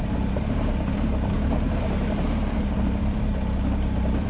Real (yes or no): no